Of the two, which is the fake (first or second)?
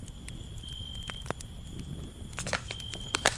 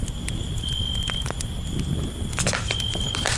first